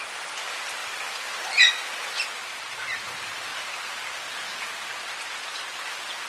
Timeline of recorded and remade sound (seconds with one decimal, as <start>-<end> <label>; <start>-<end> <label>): 0.0-2.4 recorded; 2.4-3.1 remade; 3.1-6.3 recorded